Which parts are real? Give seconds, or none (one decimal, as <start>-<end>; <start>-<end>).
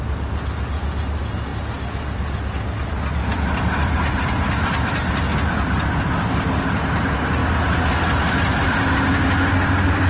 0.0-10.1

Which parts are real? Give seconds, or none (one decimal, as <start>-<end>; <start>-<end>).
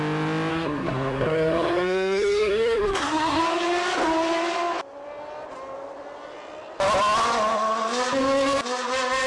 0.0-0.5; 3.4-9.3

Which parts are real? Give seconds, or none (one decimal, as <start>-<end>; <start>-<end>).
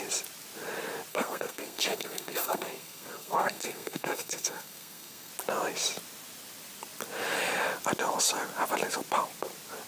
0.0-1.1; 5.3-9.9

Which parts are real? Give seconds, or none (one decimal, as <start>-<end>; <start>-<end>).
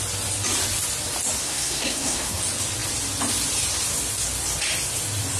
0.0-1.4; 2.4-5.4